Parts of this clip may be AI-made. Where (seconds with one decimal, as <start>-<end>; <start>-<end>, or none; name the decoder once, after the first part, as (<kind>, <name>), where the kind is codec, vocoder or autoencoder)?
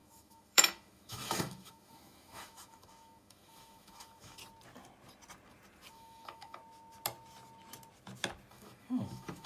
0.0-4.4 (autoencoder, DAC-VAE); 5.9-6.6; 8.5-9.5